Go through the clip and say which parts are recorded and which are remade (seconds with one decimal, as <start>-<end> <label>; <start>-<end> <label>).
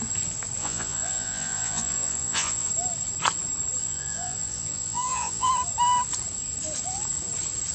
0.0-0.6 recorded; 0.6-2.7 remade; 2.7-3.8 recorded; 3.8-5.5 remade; 5.5-7.7 recorded